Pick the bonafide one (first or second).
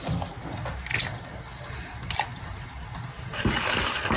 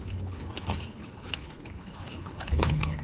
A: first